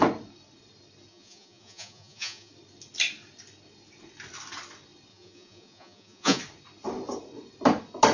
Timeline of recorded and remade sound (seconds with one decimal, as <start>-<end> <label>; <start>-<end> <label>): 0.0-1.1 recorded; 1.1-2.5 remade; 2.5-5.1 recorded; 5.1-6.4 remade; 6.4-8.1 recorded